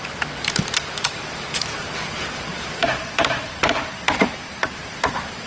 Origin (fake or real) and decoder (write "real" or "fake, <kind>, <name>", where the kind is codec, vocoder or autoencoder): fake, vocoder, BigVGAN v2